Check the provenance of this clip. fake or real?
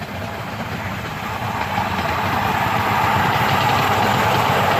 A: fake